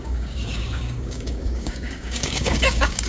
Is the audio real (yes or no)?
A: no